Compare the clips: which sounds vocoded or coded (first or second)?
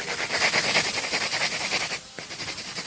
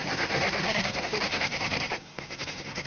second